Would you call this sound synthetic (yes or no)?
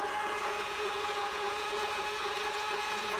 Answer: yes